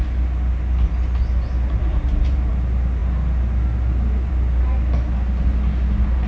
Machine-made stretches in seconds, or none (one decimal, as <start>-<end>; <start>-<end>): 1.9-2.5